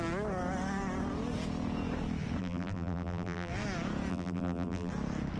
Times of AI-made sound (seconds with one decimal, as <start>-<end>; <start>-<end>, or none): 2.4-3.5; 4.1-4.9